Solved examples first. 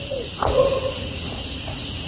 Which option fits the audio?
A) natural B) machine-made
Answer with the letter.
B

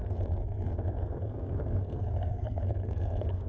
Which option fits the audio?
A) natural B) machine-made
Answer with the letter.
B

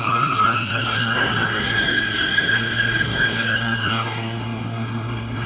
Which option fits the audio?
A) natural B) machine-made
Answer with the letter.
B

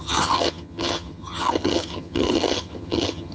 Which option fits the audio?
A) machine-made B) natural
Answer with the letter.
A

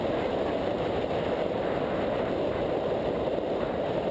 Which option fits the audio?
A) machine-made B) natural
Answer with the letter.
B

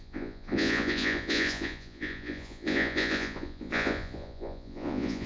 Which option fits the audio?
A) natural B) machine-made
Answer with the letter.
B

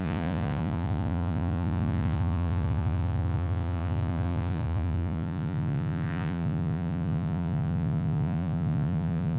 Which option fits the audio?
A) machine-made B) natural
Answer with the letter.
A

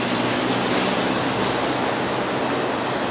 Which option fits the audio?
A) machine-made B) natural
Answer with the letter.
B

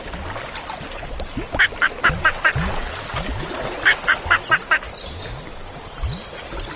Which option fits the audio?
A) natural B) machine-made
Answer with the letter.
A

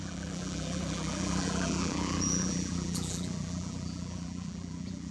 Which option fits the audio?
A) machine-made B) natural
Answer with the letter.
A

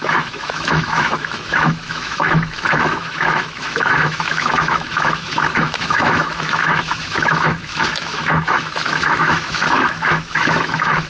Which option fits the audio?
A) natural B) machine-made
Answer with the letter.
B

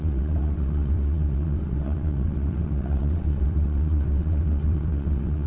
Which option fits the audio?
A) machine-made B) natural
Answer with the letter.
A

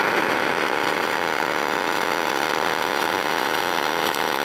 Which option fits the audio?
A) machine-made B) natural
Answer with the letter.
B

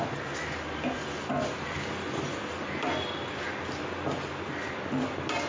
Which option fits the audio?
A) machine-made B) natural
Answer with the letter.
B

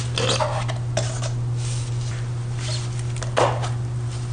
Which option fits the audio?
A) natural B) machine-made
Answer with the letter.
A